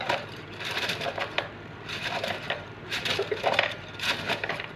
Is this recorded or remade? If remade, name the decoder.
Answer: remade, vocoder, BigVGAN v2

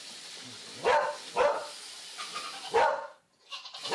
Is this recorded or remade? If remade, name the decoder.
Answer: recorded